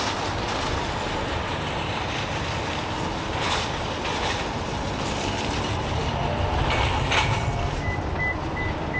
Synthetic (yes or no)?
no